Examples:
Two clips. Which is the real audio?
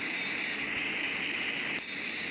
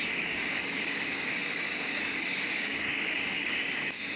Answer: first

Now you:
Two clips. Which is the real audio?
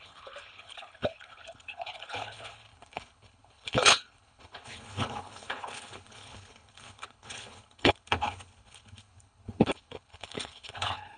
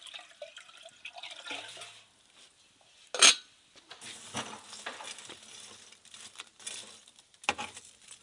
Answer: second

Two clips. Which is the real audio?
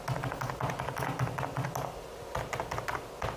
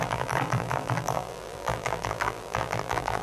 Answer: first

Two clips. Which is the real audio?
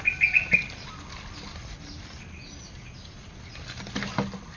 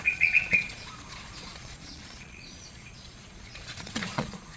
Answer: first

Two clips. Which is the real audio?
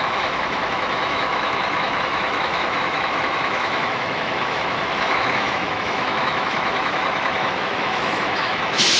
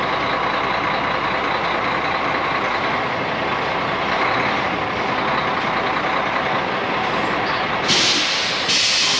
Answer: second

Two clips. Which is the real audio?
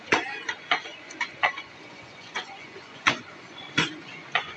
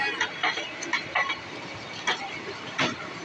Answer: second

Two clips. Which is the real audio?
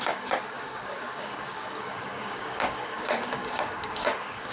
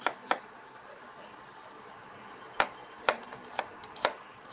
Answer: second